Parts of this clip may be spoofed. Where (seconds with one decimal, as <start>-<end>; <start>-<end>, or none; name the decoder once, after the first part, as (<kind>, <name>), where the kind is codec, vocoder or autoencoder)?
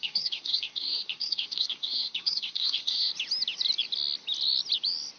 0.0-3.1 (codec, SNAC)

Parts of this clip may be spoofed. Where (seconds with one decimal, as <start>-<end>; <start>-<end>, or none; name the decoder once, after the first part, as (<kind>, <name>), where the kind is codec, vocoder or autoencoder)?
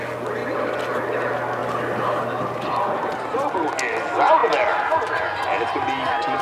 none